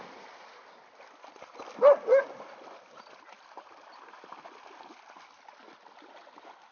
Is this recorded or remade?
recorded